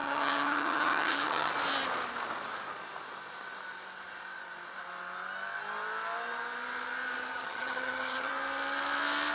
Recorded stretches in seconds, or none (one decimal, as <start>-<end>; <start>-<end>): 1.5-7.3; 8.3-9.3